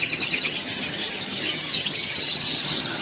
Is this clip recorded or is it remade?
remade